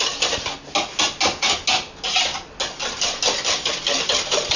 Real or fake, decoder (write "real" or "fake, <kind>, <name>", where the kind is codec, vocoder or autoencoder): real